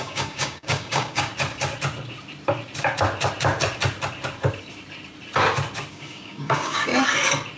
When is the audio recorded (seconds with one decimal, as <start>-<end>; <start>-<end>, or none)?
1.3-5.9; 6.9-7.6